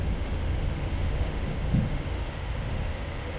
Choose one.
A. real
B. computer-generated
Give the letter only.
B